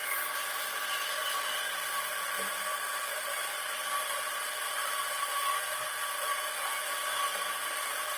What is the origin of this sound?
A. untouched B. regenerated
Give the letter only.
A